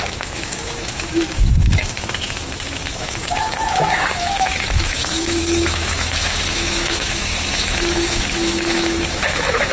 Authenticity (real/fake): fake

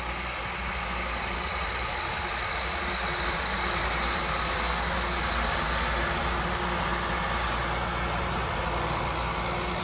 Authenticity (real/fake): real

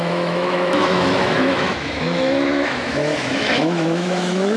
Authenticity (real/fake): fake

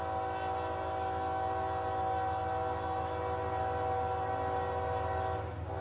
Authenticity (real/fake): real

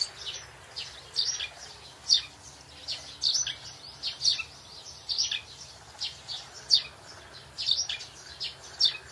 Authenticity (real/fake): real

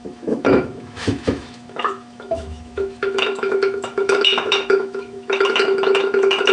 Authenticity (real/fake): fake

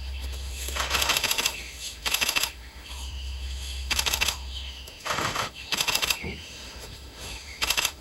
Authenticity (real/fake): fake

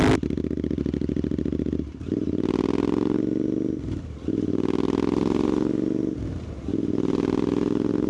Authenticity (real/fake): real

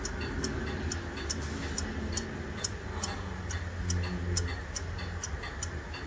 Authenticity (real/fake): real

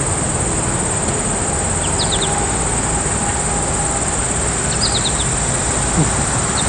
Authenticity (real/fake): real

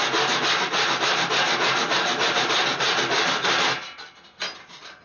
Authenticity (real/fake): real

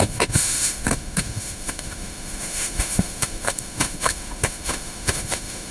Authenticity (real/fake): fake